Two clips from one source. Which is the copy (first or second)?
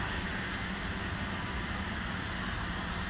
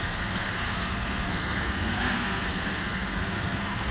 second